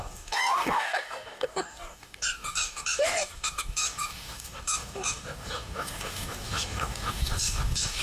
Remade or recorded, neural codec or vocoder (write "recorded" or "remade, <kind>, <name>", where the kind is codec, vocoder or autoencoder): remade, codec, DAC